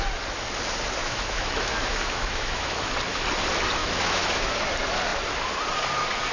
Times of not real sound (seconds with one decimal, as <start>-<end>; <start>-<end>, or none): 1.0-2.9; 3.8-4.5